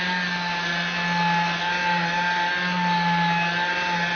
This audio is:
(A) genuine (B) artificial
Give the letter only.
A